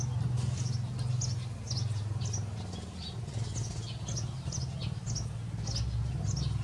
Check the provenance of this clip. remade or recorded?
recorded